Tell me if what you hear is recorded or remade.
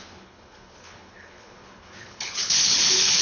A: remade